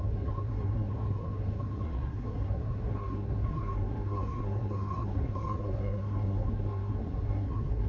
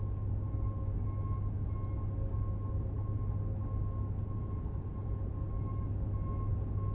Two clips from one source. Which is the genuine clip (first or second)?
second